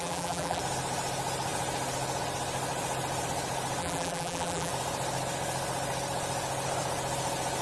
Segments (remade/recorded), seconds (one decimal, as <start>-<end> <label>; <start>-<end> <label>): 0.0-0.6 remade; 0.6-3.8 recorded; 3.8-4.7 remade; 4.7-7.6 recorded